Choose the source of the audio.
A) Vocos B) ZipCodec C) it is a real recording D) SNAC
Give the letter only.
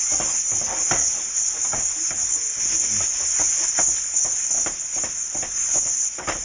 C